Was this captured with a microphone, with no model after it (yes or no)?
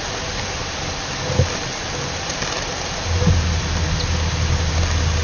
yes